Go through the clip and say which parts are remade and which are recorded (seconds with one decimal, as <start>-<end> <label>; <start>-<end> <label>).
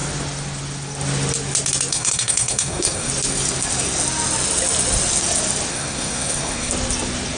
0.0-1.9 recorded; 1.9-3.1 remade; 3.1-5.7 recorded; 5.7-6.7 remade; 6.7-7.4 recorded